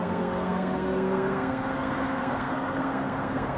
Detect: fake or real fake